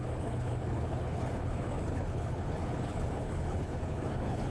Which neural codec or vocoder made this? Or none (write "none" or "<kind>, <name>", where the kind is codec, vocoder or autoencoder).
codec, HILCodec